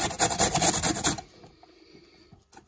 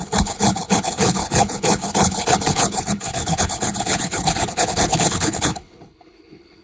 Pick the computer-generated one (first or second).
second